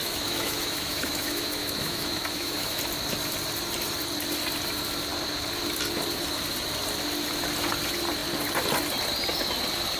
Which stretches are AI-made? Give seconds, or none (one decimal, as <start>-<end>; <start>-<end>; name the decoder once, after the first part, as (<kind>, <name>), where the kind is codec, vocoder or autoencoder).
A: 0.0-2.8 (autoencoder, DAC-VAE)